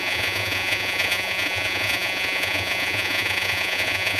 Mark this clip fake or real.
fake